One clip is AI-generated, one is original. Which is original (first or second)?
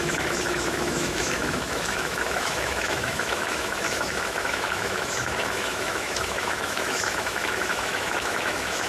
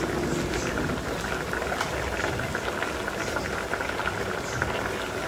second